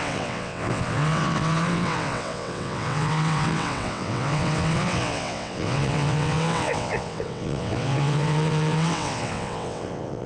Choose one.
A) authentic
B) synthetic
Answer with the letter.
B